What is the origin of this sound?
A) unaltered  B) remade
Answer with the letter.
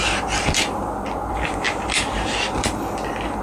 B